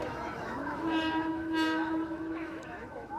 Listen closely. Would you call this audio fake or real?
fake